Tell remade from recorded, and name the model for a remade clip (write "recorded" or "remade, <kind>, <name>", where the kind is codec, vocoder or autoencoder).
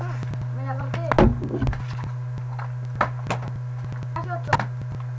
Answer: recorded